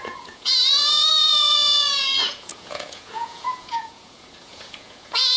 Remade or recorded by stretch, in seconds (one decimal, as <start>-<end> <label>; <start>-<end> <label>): 0.0-5.4 remade